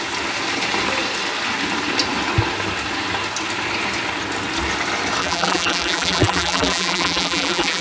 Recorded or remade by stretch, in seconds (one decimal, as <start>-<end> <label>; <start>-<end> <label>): 0.0-5.2 recorded; 5.2-7.8 remade